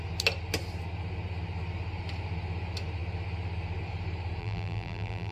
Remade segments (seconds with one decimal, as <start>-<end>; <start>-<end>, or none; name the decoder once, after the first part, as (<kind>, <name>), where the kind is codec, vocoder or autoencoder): 4.4-5.3 (vocoder, BigVGAN v2)